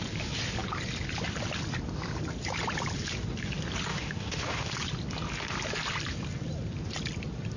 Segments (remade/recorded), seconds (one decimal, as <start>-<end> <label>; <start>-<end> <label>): 0.0-3.9 recorded; 3.9-4.7 remade; 4.7-7.6 recorded